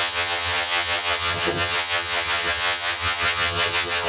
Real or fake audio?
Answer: fake